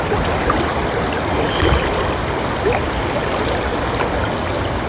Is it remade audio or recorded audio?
recorded